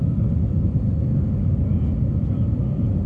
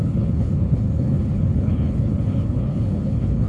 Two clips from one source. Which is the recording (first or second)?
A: first